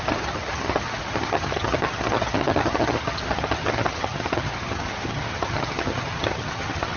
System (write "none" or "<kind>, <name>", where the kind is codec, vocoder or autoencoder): vocoder, HiFi-GAN